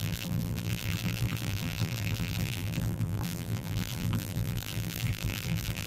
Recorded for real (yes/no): no